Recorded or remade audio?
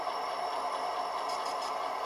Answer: remade